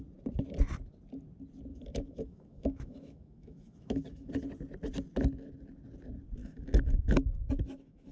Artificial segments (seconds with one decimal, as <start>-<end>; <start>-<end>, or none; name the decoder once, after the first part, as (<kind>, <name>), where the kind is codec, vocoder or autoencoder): 1.7-4.3 (autoencoder, DAC-VAE); 6.4-8.1

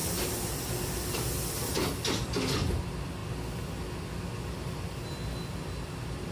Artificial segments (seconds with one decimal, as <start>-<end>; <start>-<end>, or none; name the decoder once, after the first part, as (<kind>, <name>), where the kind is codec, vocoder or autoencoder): none

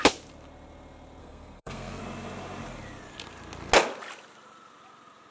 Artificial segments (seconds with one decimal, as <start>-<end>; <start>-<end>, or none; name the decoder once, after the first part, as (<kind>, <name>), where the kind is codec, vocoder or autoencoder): 1.2-2.0 (codec, SNAC)

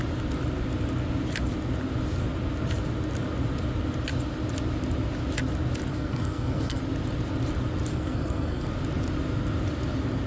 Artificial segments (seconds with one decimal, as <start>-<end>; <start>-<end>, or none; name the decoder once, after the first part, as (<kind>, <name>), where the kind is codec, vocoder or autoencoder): 5.9-6.8 (codec, SNAC); 7.9-8.7

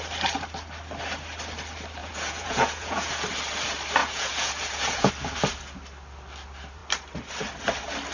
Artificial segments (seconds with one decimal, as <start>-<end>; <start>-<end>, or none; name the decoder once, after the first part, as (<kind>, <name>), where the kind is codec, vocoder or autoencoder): 2.0-3.1 (vocoder, Vocos); 4.0-5.1

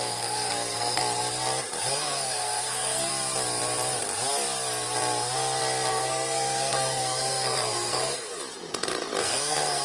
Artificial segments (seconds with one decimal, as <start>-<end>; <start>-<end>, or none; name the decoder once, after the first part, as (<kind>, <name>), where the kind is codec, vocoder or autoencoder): 0.0-1.0 (codec, SNAC); 1.8-3.1; 5.9-8.3; 9.2-9.8

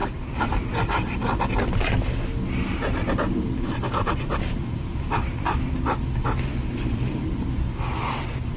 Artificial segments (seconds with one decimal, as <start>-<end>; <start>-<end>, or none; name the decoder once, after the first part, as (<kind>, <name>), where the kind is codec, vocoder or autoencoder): 0.0-1.5 (vocoder, BigVGAN v2)

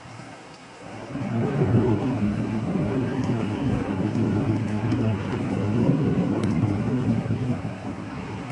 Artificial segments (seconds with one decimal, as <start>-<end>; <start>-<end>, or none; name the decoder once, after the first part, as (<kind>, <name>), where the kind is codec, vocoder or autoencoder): 0.0-8.5 (codec, SNAC)